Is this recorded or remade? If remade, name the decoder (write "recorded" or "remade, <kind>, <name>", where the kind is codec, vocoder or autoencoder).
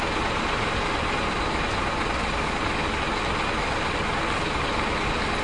recorded